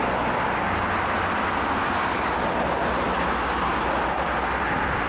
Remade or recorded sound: recorded